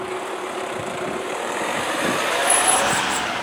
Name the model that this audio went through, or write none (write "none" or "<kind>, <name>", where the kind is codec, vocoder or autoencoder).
vocoder, BigVGAN v2